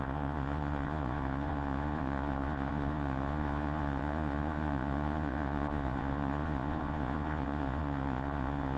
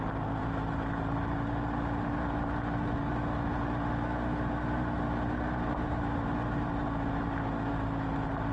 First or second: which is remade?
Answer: first